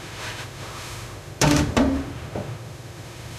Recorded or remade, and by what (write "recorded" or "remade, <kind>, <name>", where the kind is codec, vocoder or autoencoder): remade, autoencoder, DAC-VAE